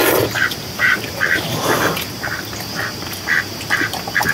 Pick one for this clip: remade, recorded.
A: remade